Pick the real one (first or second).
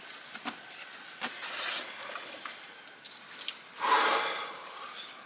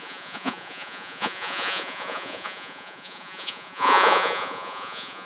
first